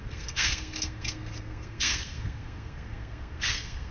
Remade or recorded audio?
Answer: remade